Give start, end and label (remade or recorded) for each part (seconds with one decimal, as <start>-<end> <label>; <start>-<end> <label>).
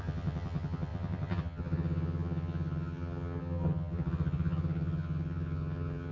0.0-6.1 remade